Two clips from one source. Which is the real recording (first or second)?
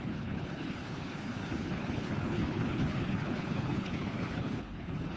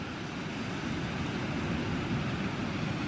second